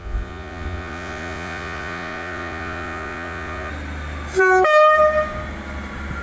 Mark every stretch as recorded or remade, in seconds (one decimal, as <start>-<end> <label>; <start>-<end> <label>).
0.0-3.7 remade; 3.7-6.2 recorded